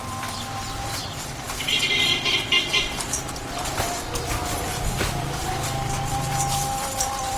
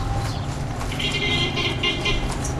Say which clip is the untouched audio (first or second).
second